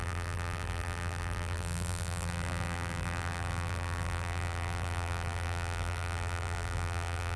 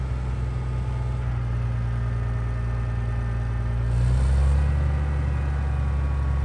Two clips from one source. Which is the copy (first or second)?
first